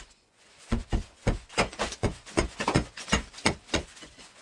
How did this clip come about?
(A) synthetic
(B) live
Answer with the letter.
A